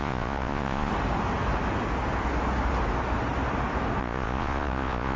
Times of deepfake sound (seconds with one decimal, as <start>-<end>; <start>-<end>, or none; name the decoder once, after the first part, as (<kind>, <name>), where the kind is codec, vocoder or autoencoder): 0.0-0.9 (vocoder, Vocos); 4.0-5.2